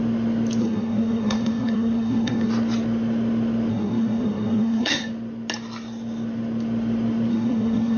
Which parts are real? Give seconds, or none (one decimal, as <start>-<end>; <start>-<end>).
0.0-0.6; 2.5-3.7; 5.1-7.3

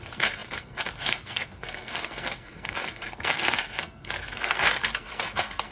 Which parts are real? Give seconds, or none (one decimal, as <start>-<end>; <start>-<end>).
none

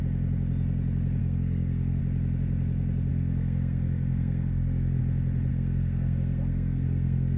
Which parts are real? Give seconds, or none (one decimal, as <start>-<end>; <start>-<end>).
0.0-1.2; 2.0-3.1; 5.0-5.5

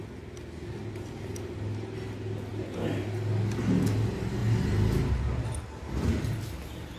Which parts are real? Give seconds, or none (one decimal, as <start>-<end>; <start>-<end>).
0.0-7.0

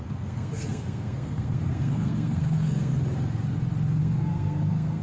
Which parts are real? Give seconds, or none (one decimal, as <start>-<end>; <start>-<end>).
2.9-4.0

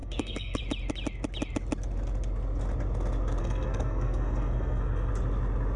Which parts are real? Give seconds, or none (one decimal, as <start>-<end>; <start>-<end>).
0.6-3.4; 5.1-5.8

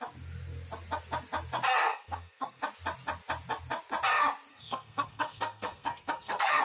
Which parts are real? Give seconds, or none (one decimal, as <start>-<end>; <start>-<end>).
0.0-1.9; 2.6-4.5

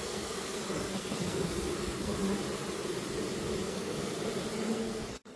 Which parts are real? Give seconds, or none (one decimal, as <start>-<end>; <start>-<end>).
2.2-3.6; 4.2-4.7